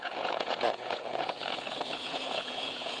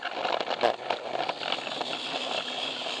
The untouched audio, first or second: second